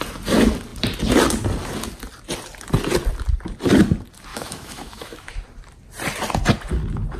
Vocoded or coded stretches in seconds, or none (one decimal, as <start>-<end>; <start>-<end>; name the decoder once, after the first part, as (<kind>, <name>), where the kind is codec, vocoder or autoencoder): 4.3-5.3 (autoencoder, DAC-VAE)